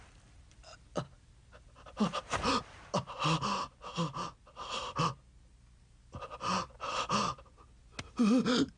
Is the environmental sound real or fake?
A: real